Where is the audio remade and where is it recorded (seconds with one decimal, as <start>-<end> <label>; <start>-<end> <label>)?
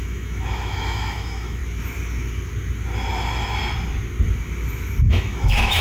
0.0-1.6 remade; 1.6-5.1 recorded; 5.1-5.8 remade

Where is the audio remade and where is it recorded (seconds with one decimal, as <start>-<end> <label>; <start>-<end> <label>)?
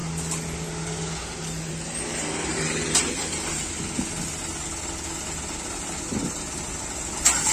0.0-2.5 recorded; 2.5-3.7 remade; 3.7-7.5 recorded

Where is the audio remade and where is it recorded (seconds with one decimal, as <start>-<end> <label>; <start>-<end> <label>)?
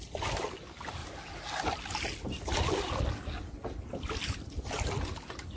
0.0-5.6 recorded